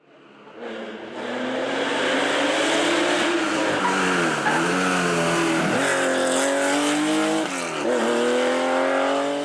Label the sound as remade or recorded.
recorded